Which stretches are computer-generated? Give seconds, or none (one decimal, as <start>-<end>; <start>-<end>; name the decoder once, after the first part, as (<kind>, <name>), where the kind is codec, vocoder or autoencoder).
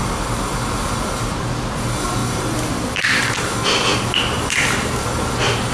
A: 2.2-3.3 (vocoder, BigVGAN v2)